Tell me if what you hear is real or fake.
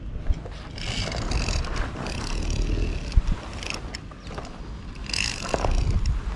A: real